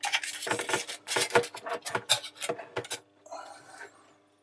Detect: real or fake real